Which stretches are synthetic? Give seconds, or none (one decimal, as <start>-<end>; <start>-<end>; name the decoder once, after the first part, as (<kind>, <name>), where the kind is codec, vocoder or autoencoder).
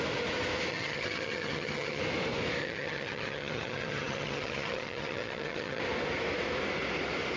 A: 0.7-2.0 (vocoder, HiFi-GAN); 2.6-5.8